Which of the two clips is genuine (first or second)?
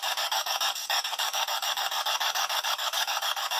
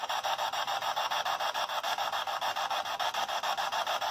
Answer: second